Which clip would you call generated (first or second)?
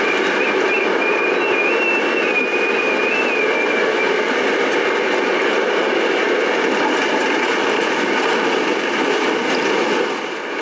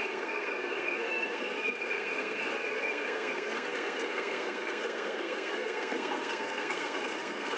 second